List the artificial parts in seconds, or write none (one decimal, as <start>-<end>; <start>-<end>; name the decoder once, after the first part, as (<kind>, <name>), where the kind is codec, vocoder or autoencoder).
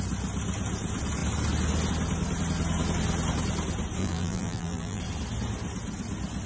4.0-5.0 (vocoder, BigVGAN v2)